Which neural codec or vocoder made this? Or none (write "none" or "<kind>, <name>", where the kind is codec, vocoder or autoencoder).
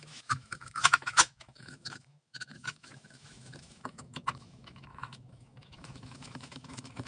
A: autoencoder, DAC-VAE